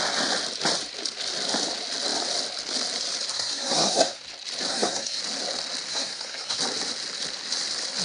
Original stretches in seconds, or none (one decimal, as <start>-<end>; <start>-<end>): 0.0-3.3; 4.2-4.7; 5.2-5.9; 6.6-8.0